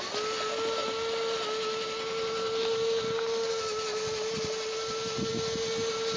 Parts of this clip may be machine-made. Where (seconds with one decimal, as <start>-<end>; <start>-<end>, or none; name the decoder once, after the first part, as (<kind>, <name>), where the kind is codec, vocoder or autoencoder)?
none